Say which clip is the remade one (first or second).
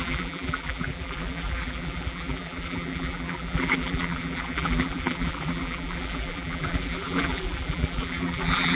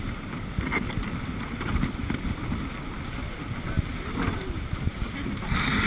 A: first